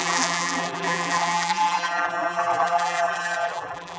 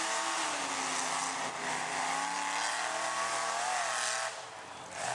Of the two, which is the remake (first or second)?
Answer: first